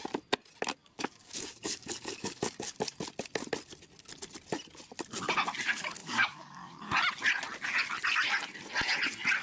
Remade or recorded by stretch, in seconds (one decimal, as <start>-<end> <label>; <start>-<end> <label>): 0.0-0.8 recorded; 0.8-2.8 remade; 2.8-6.0 recorded; 6.0-6.9 remade; 6.9-9.4 recorded

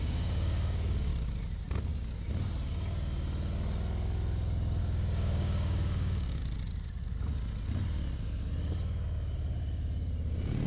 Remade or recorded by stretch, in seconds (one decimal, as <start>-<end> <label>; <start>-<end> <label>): 0.0-1.1 remade; 1.1-4.8 recorded; 4.8-6.4 remade; 6.4-10.7 recorded